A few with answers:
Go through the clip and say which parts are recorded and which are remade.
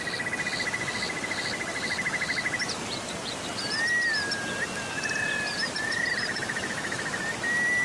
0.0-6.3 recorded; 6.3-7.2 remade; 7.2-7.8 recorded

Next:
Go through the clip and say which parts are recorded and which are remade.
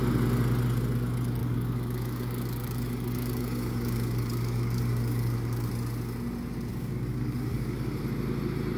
0.0-1.4 recorded; 1.4-5.7 remade; 5.7-6.7 recorded; 6.7-8.0 remade; 8.0-8.8 recorded